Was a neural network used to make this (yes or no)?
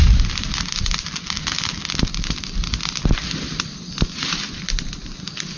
no